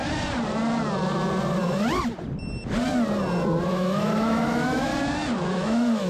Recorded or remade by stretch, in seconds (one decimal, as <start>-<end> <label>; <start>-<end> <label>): 0.0-3.7 recorded; 3.7-4.9 remade; 4.9-5.5 recorded; 5.5-6.1 remade